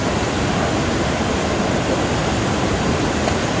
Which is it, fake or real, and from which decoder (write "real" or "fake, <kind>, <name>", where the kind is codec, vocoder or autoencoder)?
real